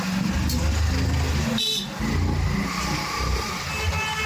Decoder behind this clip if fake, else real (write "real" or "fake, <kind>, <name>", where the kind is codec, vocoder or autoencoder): real